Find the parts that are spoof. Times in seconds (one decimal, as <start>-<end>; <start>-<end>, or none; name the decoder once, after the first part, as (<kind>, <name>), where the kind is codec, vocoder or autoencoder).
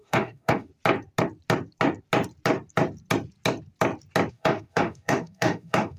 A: 0.0-0.7 (autoencoder, DAC-VAE); 4.3-6.0